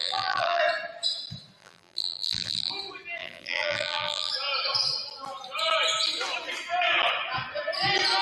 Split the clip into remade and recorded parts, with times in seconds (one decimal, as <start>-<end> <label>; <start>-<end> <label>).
0.0-0.6 remade; 0.6-1.6 recorded; 1.6-2.7 remade; 2.7-3.2 recorded; 3.2-4.3 remade; 4.3-8.2 recorded